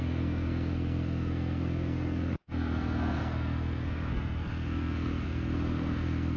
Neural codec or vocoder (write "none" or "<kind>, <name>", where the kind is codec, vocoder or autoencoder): codec, SNAC